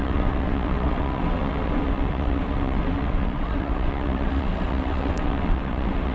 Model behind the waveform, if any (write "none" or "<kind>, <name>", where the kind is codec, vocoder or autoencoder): vocoder, WaveNeXt